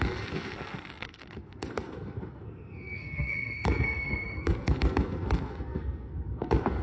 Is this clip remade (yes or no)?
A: yes